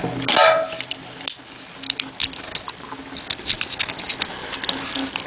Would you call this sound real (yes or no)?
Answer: yes